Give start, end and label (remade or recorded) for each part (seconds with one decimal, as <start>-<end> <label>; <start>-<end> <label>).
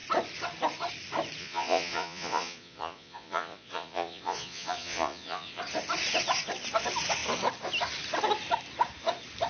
0.0-1.4 recorded; 1.4-5.6 remade; 5.6-9.5 recorded